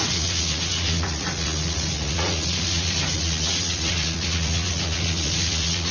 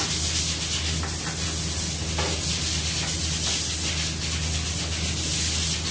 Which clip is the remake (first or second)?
first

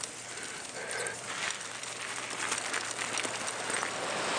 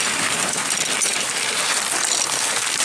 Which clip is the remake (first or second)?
first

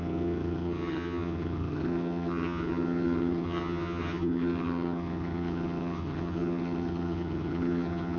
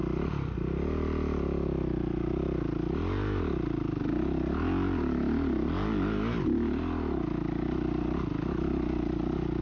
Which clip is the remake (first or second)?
first